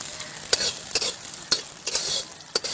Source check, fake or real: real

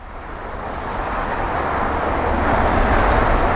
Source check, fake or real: real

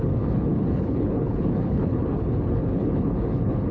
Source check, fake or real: fake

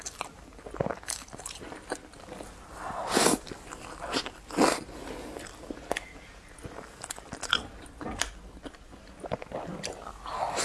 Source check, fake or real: real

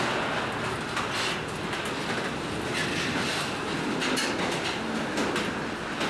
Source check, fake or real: real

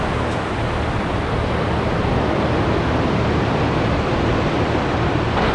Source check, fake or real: real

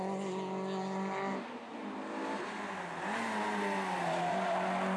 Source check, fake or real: real